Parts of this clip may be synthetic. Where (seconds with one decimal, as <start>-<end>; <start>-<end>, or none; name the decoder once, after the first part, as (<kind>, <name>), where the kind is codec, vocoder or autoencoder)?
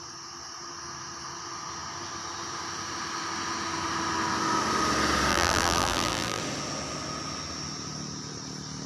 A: 5.3-6.4 (vocoder, BigVGAN v2)